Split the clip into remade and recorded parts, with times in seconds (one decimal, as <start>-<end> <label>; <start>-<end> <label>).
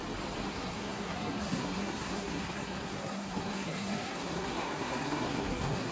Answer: 0.0-0.5 recorded; 0.5-5.9 remade